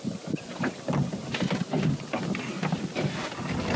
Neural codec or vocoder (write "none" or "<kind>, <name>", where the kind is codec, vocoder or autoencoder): none